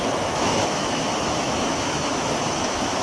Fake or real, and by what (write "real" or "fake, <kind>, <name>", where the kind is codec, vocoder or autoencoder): fake, autoencoder, DAC-VAE